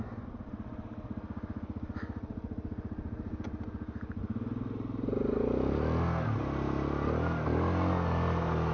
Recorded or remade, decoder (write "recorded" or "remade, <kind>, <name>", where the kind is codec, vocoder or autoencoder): recorded